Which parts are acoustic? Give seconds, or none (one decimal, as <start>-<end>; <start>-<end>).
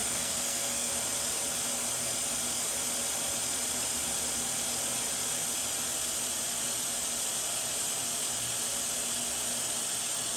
0.9-10.4